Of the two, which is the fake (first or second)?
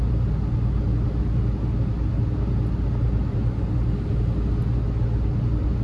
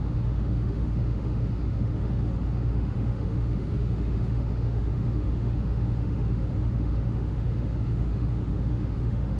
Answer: second